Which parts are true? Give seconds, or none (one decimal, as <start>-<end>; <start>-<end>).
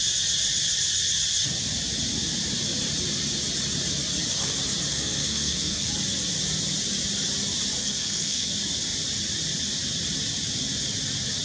0.0-4.9; 5.9-7.8; 8.5-11.4